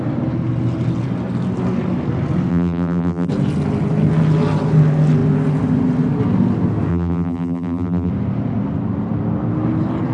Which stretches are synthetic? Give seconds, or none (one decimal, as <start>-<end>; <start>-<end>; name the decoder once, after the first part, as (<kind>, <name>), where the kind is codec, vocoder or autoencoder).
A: 2.5-3.3 (vocoder, BigVGAN v2); 6.9-8.1